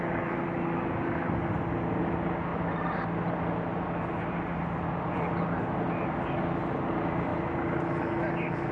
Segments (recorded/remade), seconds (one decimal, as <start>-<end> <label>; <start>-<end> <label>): 0.0-8.7 recorded